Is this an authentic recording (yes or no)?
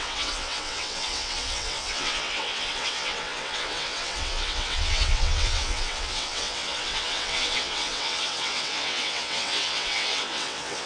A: no